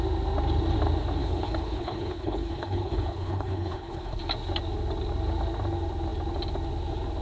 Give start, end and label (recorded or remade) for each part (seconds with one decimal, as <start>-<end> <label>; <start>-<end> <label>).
0.0-1.2 recorded; 1.2-4.2 remade; 4.2-7.2 recorded